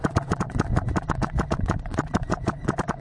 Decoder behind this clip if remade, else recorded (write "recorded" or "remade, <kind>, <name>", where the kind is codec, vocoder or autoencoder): remade, vocoder, WaveNeXt